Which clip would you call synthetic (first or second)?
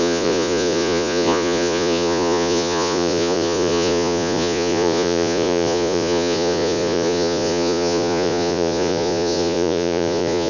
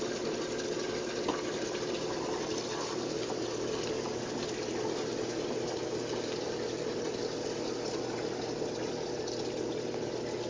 first